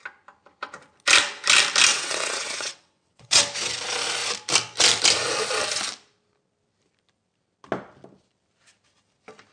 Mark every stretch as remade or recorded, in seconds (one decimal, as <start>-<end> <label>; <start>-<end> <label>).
0.0-1.9 recorded; 1.9-3.4 remade; 3.4-9.5 recorded